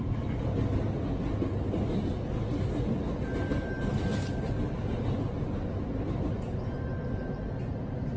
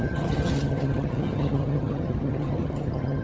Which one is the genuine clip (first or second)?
first